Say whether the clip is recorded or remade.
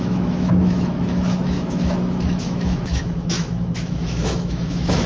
remade